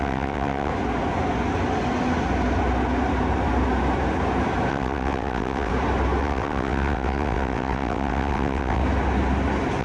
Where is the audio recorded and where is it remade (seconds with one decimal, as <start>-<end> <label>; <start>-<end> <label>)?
0.0-0.7 remade; 0.7-4.7 recorded; 4.7-5.7 remade; 5.7-6.2 recorded; 6.2-8.8 remade; 8.8-9.8 recorded